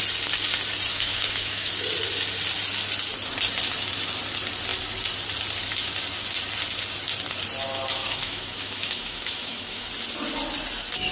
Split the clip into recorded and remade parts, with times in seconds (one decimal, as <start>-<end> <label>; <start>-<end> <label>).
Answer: 0.0-0.9 recorded; 0.9-1.7 remade; 1.7-8.0 recorded; 8.0-9.9 remade; 9.9-11.1 recorded